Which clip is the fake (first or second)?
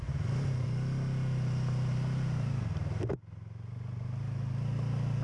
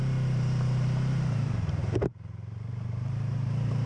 second